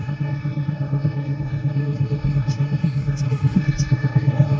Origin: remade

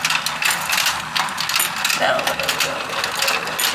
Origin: recorded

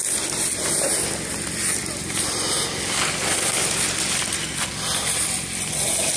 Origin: recorded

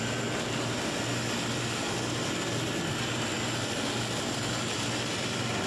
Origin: recorded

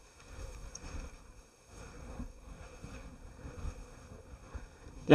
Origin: remade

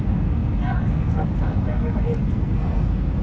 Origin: remade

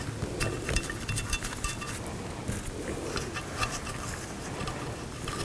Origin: recorded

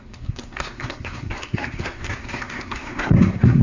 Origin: remade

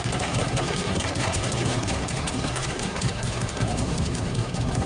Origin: remade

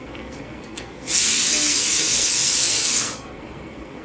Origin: remade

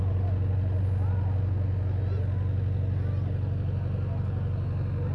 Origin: recorded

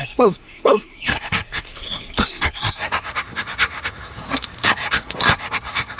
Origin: remade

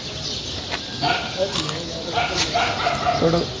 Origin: recorded